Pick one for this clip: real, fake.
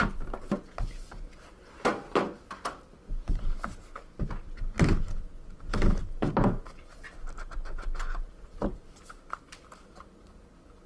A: real